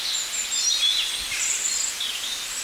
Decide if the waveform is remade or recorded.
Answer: recorded